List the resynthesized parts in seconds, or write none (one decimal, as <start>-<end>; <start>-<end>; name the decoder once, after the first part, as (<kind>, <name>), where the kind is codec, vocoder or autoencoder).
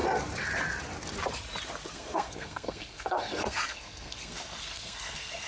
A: 1.9-5.5 (codec, SNAC)